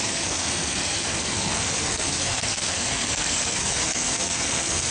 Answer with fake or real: fake